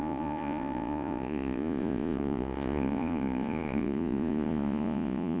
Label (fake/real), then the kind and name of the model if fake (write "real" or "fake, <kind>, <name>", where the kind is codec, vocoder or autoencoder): fake, vocoder, Vocos